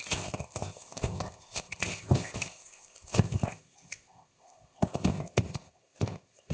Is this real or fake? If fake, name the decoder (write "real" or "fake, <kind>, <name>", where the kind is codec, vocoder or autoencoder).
fake, codec, ZipCodec